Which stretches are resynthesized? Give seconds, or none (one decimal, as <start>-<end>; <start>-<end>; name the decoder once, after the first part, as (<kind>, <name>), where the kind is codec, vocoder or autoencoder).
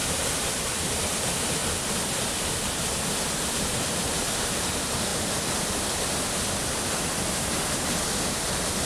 0.0-1.6 (vocoder, BigVGAN v2); 3.3-5.1; 6.8-8.9